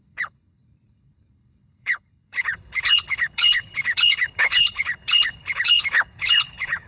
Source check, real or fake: fake